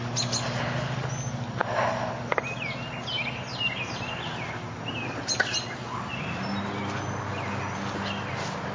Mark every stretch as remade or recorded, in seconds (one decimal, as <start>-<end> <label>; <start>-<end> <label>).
0.0-8.7 recorded